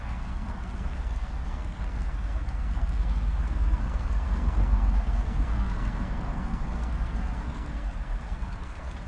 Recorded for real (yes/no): no